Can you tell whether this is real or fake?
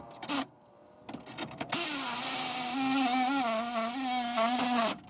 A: real